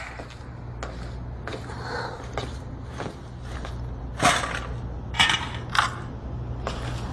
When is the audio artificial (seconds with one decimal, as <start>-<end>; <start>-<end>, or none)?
none